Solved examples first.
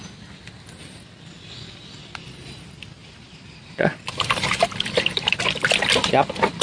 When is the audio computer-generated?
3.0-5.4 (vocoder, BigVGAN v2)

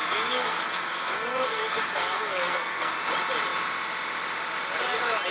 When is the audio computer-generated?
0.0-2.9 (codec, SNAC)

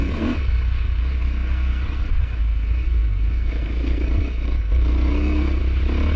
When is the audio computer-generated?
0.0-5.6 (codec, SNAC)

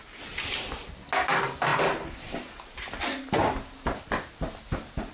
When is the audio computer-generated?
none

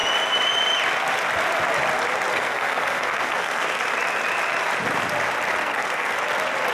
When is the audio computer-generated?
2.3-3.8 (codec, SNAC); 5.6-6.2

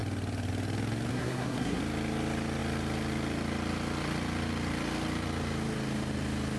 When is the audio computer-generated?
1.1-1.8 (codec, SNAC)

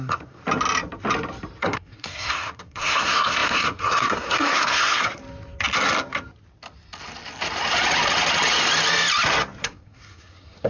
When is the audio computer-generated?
0.0-0.4 (codec, SNAC); 1.6-5.2; 9.6-10.7

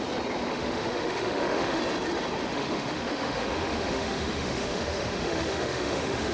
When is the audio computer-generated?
0.5-1.8 (autoencoder, DAC-VAE); 2.5-6.3